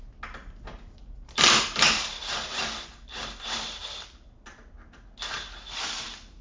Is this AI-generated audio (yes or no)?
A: no